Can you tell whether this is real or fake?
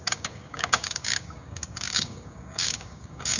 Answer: fake